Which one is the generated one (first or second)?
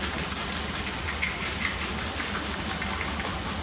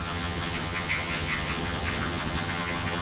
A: second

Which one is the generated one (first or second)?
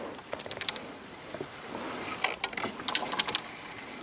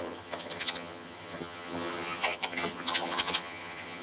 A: second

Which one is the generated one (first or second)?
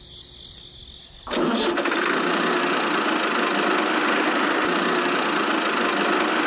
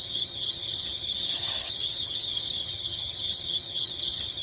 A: second